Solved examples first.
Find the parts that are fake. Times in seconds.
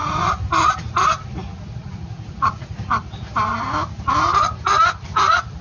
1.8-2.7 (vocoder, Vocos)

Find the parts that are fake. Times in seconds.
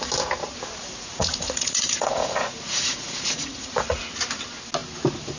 0.8-4.0 (vocoder, Vocos)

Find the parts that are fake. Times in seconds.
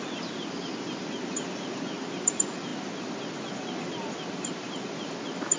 none